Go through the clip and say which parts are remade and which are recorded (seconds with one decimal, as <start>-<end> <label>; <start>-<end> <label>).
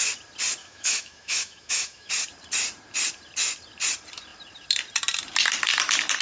0.0-0.6 recorded; 0.6-2.1 remade; 2.1-6.2 recorded